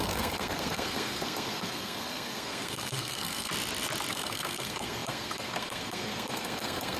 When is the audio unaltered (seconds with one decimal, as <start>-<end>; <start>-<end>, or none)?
3.5-4.1